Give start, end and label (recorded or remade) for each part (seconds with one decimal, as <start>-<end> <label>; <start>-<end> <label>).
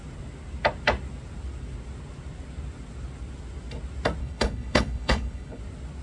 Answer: 0.0-4.2 recorded; 4.2-5.6 remade; 5.6-6.0 recorded